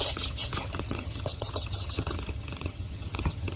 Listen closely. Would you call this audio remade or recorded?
remade